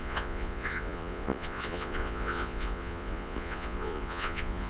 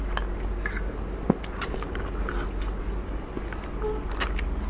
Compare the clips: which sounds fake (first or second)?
first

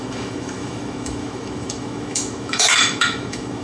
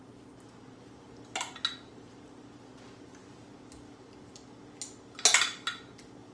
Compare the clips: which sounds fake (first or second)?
first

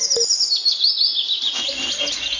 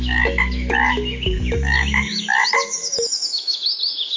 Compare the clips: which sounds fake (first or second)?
second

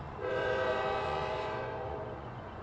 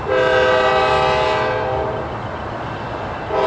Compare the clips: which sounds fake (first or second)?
first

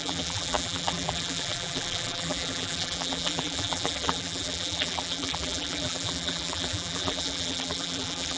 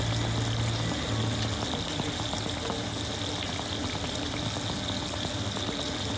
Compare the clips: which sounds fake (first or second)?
first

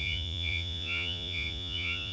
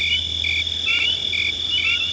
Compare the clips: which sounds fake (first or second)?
first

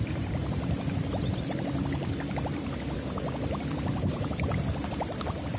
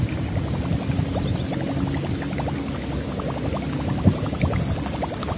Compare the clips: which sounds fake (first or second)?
first